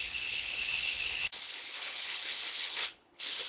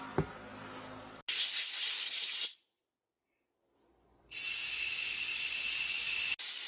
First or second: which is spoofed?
first